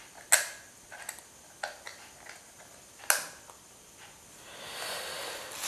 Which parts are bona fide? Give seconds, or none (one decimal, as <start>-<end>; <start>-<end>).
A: 0.0-5.7